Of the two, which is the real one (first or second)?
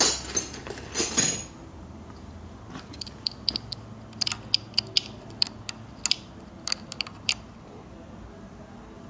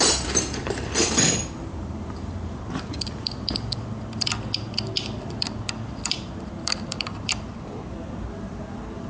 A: first